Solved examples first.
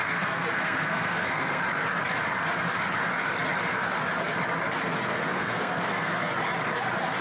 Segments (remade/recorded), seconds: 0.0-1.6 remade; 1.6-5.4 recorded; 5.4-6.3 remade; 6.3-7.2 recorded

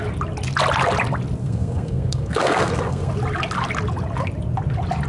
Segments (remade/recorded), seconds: 0.0-1.4 recorded; 1.4-3.1 remade; 3.1-5.1 recorded

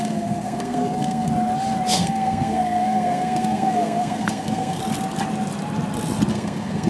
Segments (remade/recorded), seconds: 0.0-1.3 remade; 1.3-1.9 recorded; 1.9-4.8 remade; 4.8-6.3 recorded; 6.3-6.9 remade

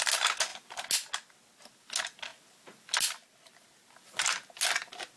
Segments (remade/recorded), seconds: 0.0-5.2 recorded

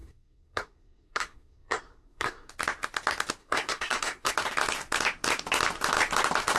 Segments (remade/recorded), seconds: 0.0-2.5 remade; 2.5-3.4 recorded; 3.4-4.3 remade; 4.3-6.6 recorded

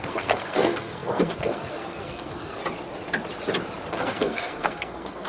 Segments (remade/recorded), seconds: 0.0-2.6 remade; 2.6-3.9 recorded; 3.9-5.3 remade

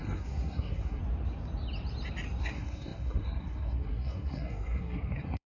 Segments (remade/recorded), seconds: 0.0-1.0 remade; 1.0-2.4 recorded; 2.4-5.6 remade

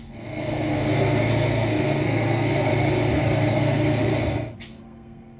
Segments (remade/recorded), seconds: 0.0-2.7 remade; 2.7-3.2 recorded; 3.2-4.1 remade; 4.1-4.7 recorded; 4.7-5.4 remade